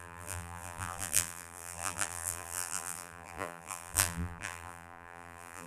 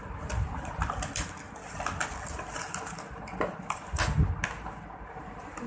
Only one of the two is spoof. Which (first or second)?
first